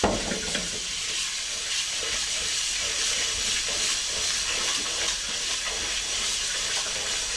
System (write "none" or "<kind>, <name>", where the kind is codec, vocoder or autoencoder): none